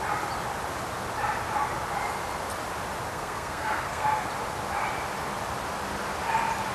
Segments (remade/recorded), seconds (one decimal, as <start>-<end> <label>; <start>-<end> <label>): 0.0-3.1 recorded; 3.1-4.3 remade; 4.3-6.7 recorded